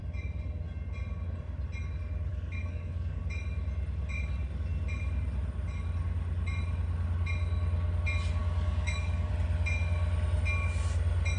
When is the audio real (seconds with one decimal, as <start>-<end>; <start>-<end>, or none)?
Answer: 0.0-2.3; 3.2-8.4; 9.3-11.4

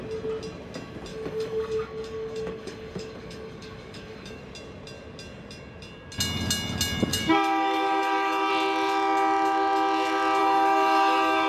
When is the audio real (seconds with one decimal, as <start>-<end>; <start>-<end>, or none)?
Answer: 0.0-1.1; 4.4-7.1; 8.5-10.4

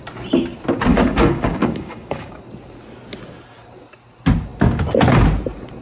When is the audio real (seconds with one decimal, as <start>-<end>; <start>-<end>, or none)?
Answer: 0.0-0.9; 2.4-5.8

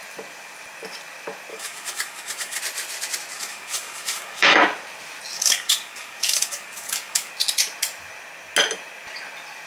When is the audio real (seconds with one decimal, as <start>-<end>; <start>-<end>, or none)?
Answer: 0.0-1.5; 2.6-3.3; 4.6-5.3; 7.3-9.7

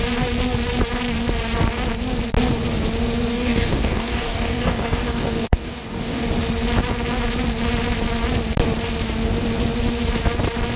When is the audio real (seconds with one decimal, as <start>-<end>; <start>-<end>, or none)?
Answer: 0.0-3.3; 6.3-10.8